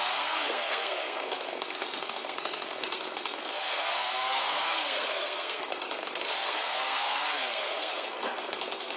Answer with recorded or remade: remade